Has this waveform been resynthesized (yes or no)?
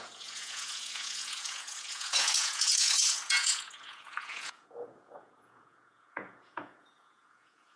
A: yes